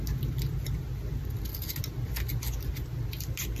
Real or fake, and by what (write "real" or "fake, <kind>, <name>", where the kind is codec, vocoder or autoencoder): real